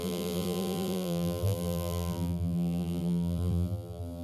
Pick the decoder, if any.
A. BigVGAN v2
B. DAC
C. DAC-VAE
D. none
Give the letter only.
A